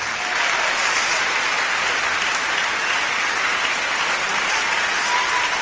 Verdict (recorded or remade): recorded